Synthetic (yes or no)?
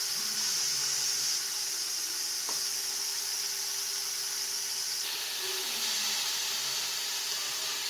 yes